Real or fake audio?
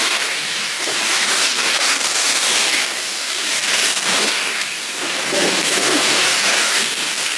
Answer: fake